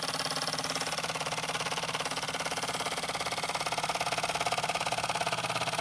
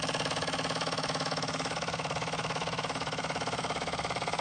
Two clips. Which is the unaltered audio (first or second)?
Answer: first